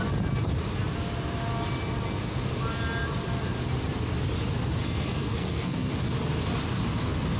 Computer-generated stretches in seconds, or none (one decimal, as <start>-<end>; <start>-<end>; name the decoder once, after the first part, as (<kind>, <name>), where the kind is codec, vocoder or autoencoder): 4.8-5.9 (codec, SNAC)

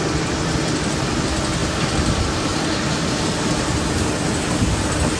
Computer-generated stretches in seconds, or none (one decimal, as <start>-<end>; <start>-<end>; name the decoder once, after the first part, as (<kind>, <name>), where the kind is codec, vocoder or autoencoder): none